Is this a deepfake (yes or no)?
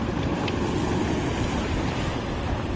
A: no